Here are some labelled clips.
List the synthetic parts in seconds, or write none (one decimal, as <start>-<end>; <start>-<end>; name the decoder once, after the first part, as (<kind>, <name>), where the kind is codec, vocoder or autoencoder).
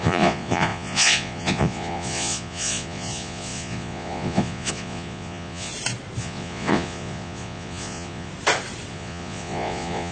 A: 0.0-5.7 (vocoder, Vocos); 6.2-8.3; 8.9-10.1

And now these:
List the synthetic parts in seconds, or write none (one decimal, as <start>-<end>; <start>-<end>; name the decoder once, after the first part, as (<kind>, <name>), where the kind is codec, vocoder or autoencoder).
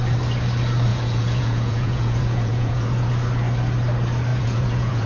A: 0.9-3.1 (vocoder, Vocos); 4.3-5.1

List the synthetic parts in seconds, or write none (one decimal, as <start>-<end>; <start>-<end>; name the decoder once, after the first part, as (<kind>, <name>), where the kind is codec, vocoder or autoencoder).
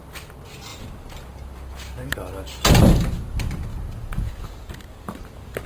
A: 3.7-4.7 (vocoder, Vocos)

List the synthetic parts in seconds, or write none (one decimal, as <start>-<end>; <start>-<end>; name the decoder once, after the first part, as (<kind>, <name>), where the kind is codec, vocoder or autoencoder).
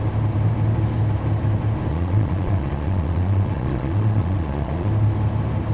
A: 1.9-4.9 (vocoder, Vocos)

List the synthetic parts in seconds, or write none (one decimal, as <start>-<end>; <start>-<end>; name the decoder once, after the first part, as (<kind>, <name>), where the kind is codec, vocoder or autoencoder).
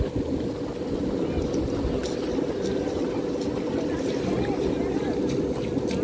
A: none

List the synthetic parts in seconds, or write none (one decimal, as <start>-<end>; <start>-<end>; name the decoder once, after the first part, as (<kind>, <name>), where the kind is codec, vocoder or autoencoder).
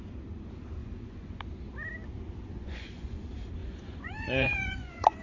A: 0.8-1.4 (vocoder, Vocos); 2.5-3.2; 3.6-5.2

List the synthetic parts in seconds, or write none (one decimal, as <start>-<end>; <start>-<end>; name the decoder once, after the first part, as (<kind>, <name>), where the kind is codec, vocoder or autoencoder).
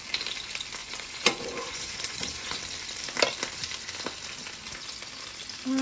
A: 0.8-2.6 (vocoder, Vocos)